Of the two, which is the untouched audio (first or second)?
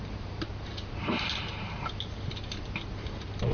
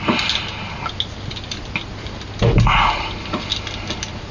second